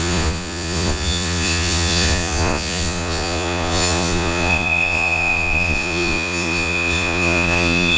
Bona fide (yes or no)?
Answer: no